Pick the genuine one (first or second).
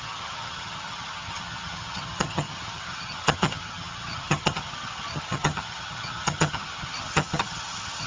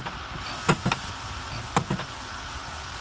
second